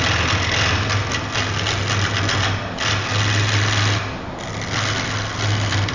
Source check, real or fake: real